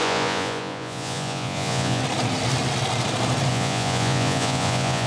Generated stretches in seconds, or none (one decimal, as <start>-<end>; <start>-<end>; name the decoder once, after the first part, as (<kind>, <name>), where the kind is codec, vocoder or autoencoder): 0.0-2.0 (vocoder, Vocos); 3.5-5.1